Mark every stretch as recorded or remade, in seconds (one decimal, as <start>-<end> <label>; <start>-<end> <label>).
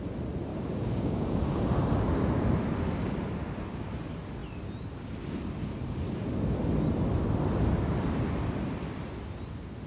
0.0-0.5 recorded; 0.5-1.6 remade; 1.6-9.9 recorded